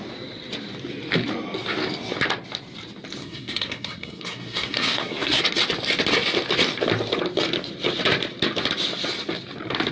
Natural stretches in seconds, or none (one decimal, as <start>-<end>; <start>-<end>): 0.0-3.2; 5.4-9.9